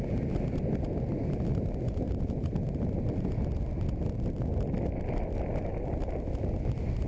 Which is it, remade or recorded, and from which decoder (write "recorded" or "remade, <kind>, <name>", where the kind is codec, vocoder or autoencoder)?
recorded